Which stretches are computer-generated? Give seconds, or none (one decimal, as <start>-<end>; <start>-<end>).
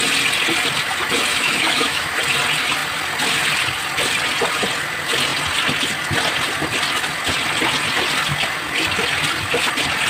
1.3-2.2